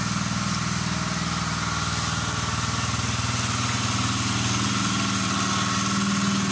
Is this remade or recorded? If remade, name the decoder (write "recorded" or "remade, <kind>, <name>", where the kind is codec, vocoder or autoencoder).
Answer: recorded